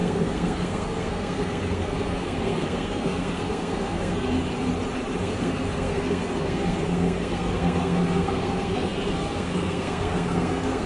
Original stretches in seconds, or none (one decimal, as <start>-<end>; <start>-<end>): 4.4-5.2